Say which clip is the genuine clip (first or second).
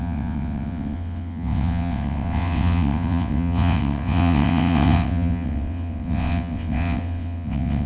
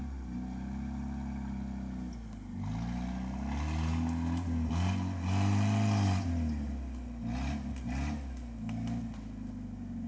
second